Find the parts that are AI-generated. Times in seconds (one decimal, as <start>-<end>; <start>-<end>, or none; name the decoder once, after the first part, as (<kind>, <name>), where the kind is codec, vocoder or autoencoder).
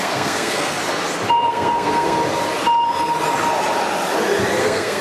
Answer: 0.0-0.8 (codec, SNAC); 1.5-2.2; 4.6-5.0